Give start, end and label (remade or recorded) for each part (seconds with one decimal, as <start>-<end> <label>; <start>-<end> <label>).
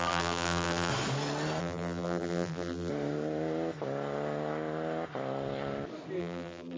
0.0-0.9 remade; 0.9-1.6 recorded; 1.6-2.9 remade; 2.9-6.2 recorded; 6.2-6.8 remade